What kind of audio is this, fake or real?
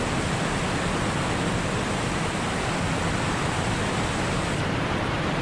real